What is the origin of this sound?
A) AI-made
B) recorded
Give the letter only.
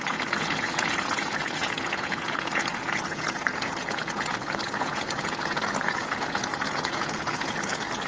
A